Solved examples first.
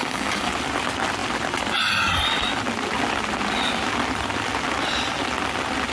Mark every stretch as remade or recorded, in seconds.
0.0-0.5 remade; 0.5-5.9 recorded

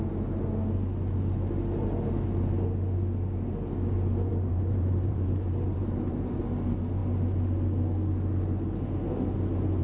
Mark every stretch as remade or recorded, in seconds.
0.0-4.3 recorded; 4.3-6.4 remade; 6.4-9.8 recorded

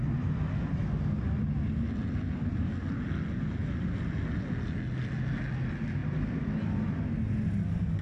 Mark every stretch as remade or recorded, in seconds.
0.0-3.6 recorded; 3.6-4.2 remade; 4.2-6.0 recorded; 6.0-7.0 remade; 7.0-8.0 recorded

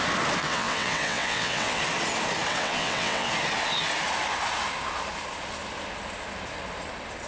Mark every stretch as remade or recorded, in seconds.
0.0-0.4 recorded; 0.4-1.8 remade; 1.8-2.5 recorded; 2.5-3.3 remade; 3.3-7.3 recorded

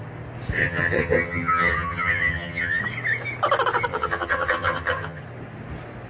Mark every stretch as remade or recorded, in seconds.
0.0-0.6 recorded; 0.6-2.8 remade; 2.8-3.9 recorded; 3.9-5.2 remade; 5.2-6.1 recorded

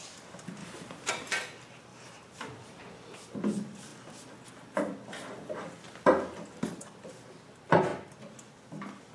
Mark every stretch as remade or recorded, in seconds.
0.0-0.6 recorded; 0.6-1.1 remade; 1.1-1.9 recorded; 1.9-2.8 remade; 2.8-9.1 recorded

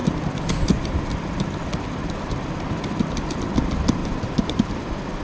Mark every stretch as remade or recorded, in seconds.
0.0-4.0 recorded; 4.0-4.8 remade; 4.8-5.2 recorded

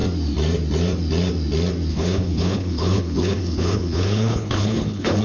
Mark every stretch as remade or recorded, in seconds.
0.0-1.9 recorded; 1.9-5.2 remade